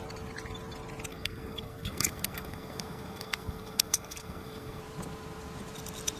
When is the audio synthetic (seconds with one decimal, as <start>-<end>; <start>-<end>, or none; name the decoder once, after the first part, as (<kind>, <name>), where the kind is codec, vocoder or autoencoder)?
1.1-4.8 (codec, SNAC)